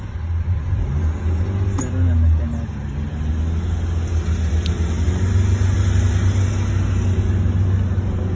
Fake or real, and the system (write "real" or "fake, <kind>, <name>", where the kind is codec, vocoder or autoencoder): real